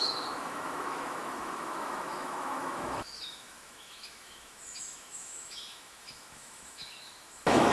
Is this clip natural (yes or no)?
no